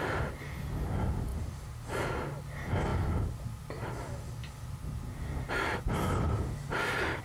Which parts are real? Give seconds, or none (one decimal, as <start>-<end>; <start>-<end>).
0.0-7.2